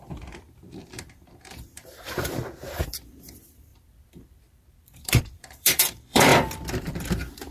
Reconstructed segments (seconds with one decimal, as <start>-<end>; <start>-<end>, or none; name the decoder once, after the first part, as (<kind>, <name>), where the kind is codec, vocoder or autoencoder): 0.0-6.3 (vocoder, BigVGAN v2); 6.9-7.5